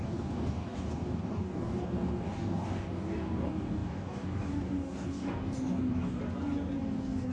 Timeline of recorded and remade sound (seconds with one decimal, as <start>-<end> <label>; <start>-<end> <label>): 0.0-6.2 remade; 6.2-6.8 recorded; 6.8-7.3 remade